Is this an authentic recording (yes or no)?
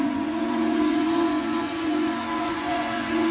no